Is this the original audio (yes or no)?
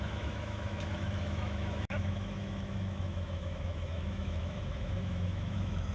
no